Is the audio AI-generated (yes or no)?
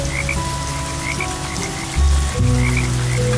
no